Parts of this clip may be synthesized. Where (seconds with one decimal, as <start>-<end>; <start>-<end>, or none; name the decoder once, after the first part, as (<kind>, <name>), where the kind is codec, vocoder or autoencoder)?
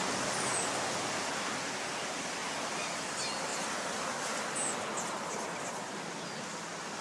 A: none